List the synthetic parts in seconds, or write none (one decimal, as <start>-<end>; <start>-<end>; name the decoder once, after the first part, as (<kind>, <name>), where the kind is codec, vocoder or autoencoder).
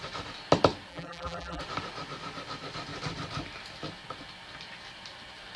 0.9-1.6 (vocoder, BigVGAN v2)